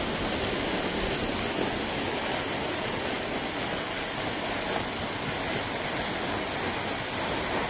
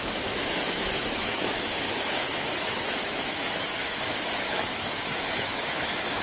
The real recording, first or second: first